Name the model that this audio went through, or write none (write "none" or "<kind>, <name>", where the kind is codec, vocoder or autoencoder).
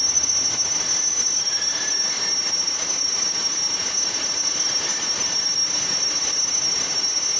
vocoder, BigVGAN v2